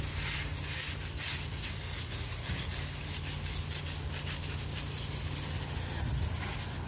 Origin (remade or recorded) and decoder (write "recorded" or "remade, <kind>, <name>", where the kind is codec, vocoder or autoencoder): recorded